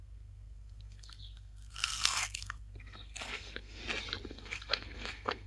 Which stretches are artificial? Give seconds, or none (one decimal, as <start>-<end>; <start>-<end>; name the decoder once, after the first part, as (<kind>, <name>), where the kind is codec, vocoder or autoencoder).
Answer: 0.0-3.8 (codec, SNAC); 4.3-5.5